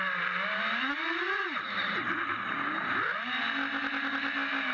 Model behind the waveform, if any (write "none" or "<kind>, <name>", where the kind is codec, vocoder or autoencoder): none